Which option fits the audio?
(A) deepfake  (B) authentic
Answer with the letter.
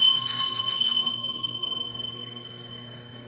A